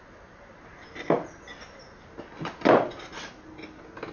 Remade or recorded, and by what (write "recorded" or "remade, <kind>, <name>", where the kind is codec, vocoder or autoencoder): recorded